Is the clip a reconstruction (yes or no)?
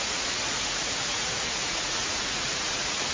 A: yes